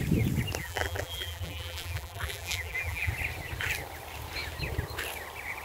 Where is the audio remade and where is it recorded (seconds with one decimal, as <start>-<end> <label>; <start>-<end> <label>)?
0.0-0.6 recorded; 0.6-3.1 remade; 3.1-5.6 recorded